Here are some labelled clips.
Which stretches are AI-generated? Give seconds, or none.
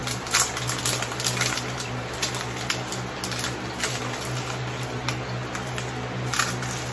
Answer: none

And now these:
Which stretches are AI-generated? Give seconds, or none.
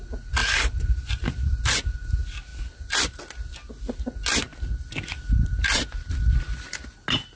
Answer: none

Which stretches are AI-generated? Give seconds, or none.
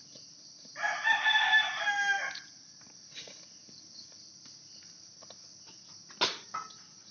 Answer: none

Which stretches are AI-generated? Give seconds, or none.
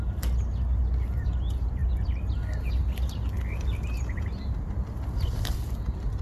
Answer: none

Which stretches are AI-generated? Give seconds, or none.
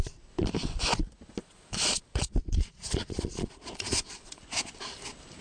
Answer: 1.4-4.4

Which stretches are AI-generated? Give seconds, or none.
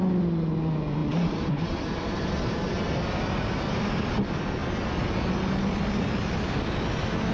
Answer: 1.0-4.1; 4.6-5.1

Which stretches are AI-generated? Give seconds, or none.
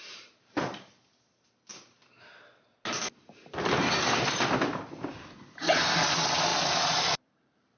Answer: 0.0-0.9; 6.5-7.8